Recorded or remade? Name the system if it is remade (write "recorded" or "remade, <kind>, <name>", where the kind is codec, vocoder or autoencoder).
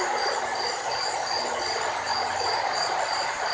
recorded